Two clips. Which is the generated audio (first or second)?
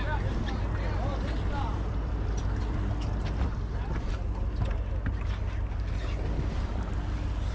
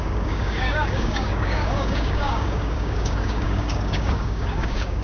second